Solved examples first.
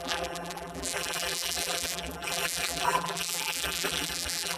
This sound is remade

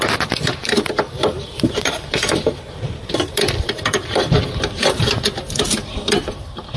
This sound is remade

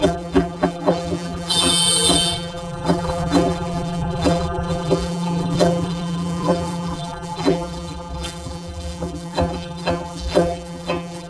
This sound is remade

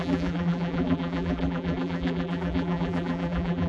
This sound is remade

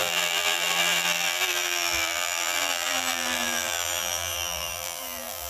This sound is remade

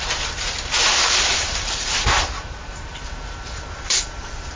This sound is remade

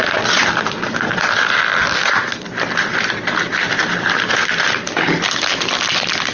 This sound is remade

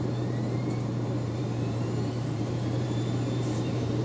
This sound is remade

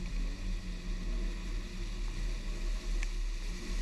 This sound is recorded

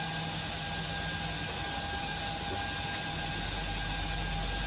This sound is recorded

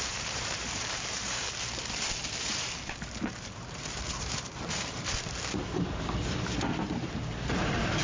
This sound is remade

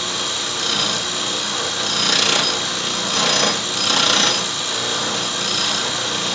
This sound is recorded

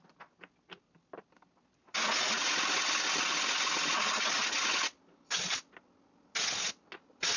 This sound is recorded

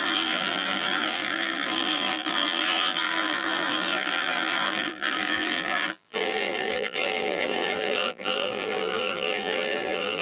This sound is remade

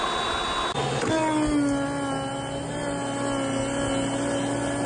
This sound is recorded